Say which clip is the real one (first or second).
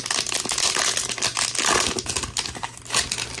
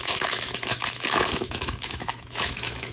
first